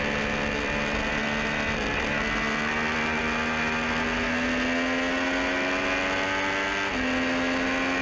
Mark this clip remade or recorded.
recorded